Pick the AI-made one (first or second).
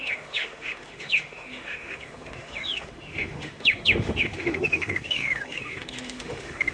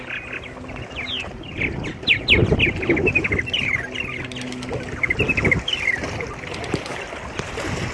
first